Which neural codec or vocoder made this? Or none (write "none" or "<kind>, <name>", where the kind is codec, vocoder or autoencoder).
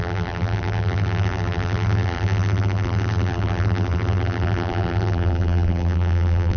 vocoder, BigVGAN v2